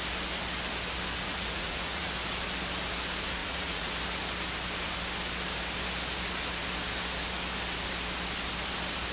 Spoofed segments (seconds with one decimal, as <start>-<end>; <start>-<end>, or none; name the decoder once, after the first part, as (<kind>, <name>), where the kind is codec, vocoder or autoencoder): 1.2-2.1 (vocoder, Vocos); 3.4-3.9